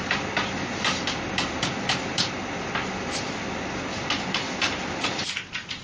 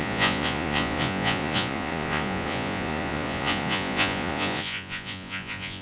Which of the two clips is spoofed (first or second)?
second